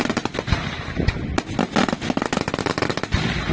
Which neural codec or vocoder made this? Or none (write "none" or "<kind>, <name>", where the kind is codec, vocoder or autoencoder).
none